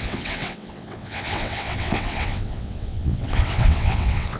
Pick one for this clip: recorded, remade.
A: remade